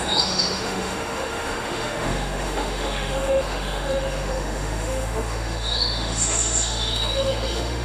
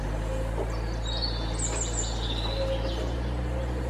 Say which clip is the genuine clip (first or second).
second